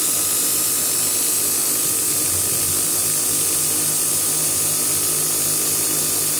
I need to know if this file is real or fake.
real